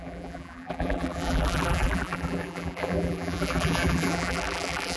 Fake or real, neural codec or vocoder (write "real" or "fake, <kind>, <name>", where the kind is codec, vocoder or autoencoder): fake, vocoder, BigVGAN v2